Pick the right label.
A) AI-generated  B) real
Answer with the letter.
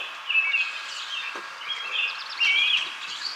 B